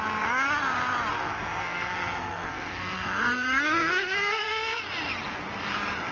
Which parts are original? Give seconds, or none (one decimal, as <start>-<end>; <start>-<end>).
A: 0.0-1.1; 4.8-6.1